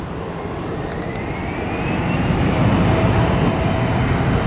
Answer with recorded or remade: recorded